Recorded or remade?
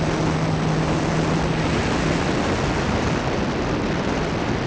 recorded